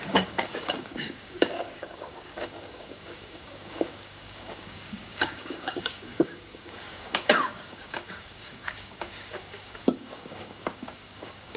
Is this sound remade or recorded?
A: remade